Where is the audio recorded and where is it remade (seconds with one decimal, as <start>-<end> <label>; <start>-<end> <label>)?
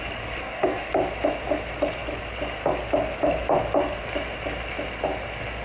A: 0.0-0.4 recorded; 0.4-0.9 remade; 0.9-5.6 recorded